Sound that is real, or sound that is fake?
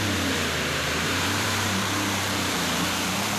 fake